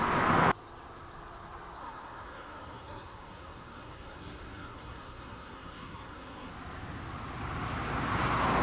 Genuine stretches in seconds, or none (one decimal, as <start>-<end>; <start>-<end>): 0.0-1.8; 6.5-8.6